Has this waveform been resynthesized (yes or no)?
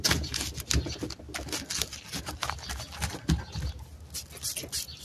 no